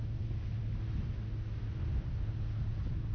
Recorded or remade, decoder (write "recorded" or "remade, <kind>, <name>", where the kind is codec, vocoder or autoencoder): recorded